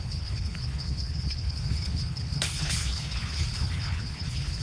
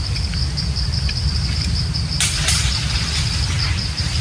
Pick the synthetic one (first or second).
first